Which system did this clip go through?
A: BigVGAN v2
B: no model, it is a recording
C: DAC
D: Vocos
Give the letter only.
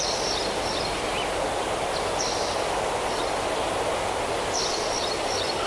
B